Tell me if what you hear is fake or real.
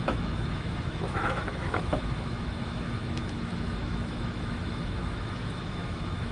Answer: fake